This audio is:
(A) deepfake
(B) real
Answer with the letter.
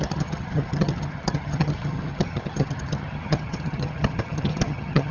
A